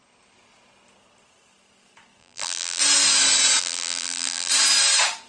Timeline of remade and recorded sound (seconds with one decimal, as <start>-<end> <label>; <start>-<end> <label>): 0.0-2.2 recorded; 2.2-2.8 remade; 2.8-3.6 recorded; 3.6-4.5 remade; 4.5-5.3 recorded